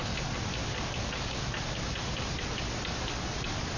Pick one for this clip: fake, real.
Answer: real